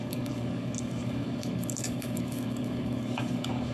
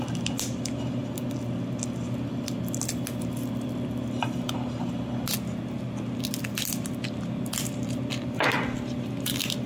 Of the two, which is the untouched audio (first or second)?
second